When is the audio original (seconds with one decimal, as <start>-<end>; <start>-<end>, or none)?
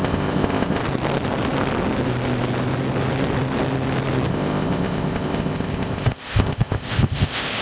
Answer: 0.8-4.3